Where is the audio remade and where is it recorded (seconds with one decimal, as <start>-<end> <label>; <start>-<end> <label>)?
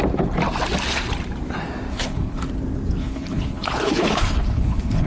0.0-1.9 recorded; 1.9-2.4 remade; 2.4-3.0 recorded; 3.0-5.1 remade